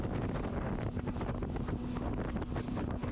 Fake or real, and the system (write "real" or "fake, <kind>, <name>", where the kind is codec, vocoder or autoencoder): real